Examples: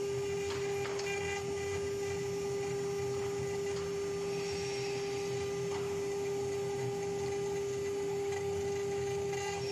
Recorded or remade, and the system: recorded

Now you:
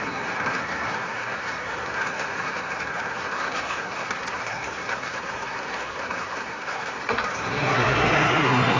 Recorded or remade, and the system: remade, codec, SNAC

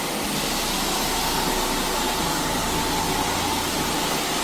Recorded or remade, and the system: recorded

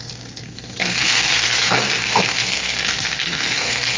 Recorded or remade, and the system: remade, codec, SNAC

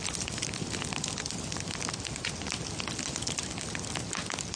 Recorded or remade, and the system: recorded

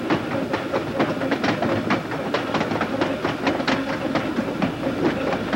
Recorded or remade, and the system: recorded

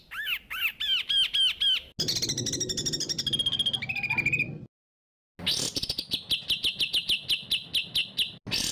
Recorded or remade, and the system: recorded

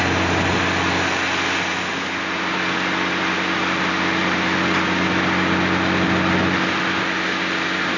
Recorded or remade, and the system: recorded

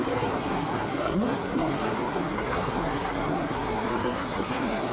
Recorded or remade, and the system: remade, codec, SNAC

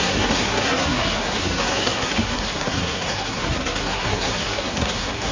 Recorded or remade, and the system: remade, codec, SNAC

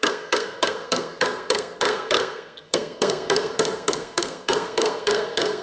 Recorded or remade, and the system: remade, codec, SNAC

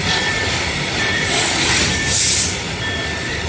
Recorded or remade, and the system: recorded